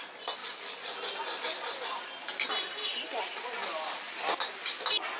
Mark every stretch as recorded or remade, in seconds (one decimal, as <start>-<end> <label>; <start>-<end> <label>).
0.0-5.2 recorded